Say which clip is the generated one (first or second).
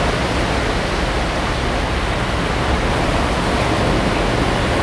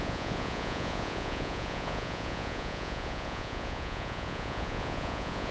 second